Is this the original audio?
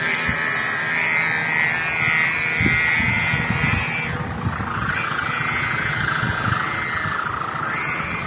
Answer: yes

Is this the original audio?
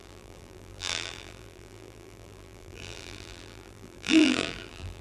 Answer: no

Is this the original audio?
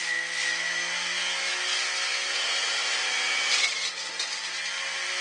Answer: yes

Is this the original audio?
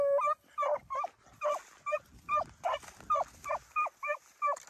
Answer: yes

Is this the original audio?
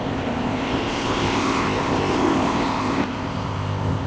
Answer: no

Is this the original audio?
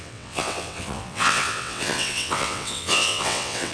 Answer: no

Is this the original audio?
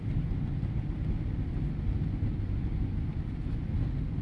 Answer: yes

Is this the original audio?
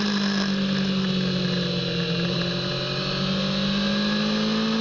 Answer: yes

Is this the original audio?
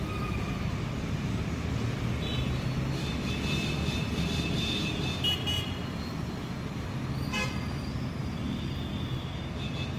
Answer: yes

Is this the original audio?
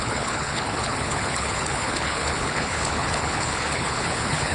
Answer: no